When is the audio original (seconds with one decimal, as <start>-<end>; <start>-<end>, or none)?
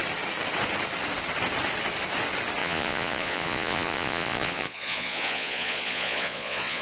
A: 0.0-2.6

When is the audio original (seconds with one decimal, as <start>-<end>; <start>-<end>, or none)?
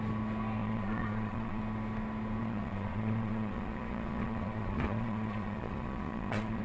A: 0.0-0.6; 1.6-2.4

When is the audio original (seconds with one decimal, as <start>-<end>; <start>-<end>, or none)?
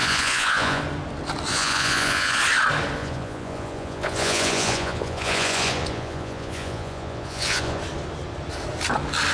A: 0.8-1.5; 2.4-3.0; 7.8-9.3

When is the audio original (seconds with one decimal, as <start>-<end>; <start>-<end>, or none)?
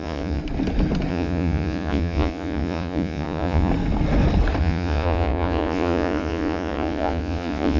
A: 0.4-1.1; 3.7-4.6